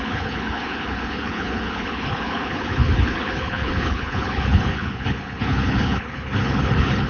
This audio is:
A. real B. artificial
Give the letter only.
B